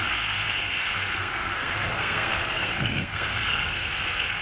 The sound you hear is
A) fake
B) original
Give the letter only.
A